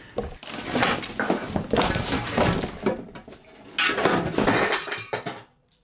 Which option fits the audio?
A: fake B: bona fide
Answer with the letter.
B